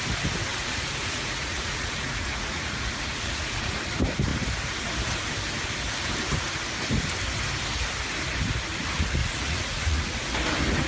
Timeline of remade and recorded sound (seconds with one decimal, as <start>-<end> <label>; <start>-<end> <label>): 0.0-0.5 recorded; 0.5-3.8 remade; 3.8-9.2 recorded; 9.2-10.3 remade; 10.3-10.9 recorded